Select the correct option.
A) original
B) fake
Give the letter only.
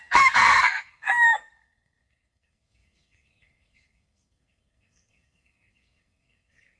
B